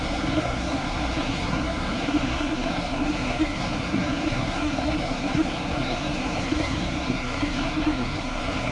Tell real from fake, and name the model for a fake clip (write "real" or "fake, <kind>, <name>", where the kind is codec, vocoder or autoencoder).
fake, codec, SNAC